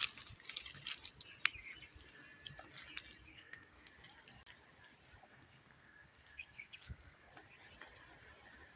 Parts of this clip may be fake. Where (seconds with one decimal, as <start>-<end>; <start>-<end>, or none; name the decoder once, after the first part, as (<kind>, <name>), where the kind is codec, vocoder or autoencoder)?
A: 3.3-3.9 (codec, SNAC); 5.2-7.3